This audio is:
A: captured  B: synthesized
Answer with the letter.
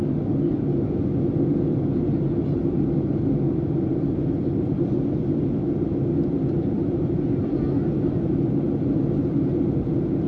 A